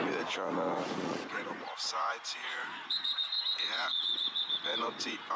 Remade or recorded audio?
remade